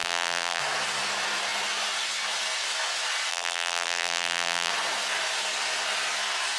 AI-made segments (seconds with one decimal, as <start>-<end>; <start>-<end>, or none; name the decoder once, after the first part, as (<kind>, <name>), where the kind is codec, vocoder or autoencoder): 0.0-0.6 (vocoder, BigVGAN v2); 3.3-4.7